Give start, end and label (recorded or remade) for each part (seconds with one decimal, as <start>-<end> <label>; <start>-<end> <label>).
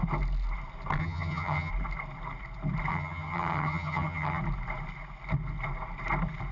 0.0-1.0 recorded; 1.0-1.7 remade; 1.7-2.9 recorded; 2.9-4.4 remade; 4.4-6.5 recorded